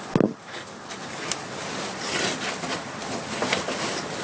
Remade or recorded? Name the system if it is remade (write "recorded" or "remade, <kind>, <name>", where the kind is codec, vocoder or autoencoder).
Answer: recorded